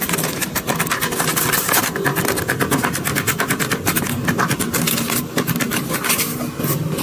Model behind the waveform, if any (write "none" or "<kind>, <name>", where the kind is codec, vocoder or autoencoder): none